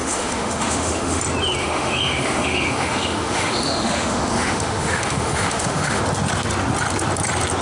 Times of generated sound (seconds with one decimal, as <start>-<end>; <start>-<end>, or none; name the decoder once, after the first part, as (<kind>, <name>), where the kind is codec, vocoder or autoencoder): 0.0-1.2 (autoencoder, DAC-VAE); 1.6-6.0